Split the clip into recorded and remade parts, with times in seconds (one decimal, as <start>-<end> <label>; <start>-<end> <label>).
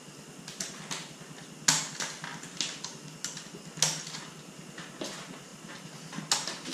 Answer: 0.0-6.7 recorded